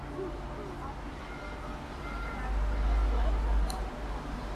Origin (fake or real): real